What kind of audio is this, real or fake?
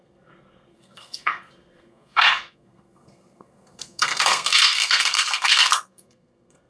fake